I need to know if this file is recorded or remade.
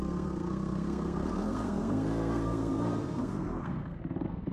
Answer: remade